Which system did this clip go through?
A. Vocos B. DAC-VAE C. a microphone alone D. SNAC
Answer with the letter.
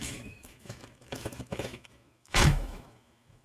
B